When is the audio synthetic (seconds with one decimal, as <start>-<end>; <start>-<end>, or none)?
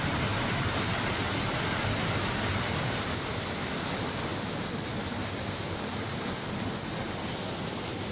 none